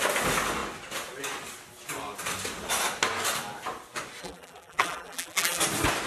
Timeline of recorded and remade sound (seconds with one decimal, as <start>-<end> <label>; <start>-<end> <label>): 0.0-4.2 recorded; 4.2-5.6 remade; 5.6-6.1 recorded